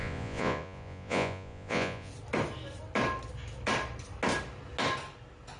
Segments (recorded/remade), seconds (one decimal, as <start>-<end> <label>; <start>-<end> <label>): 0.0-2.1 remade; 2.1-5.6 recorded